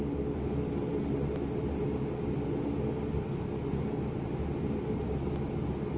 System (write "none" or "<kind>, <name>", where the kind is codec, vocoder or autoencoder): none